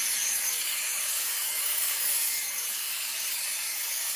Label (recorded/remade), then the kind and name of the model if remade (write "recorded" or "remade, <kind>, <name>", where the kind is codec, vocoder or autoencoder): remade, codec, DAC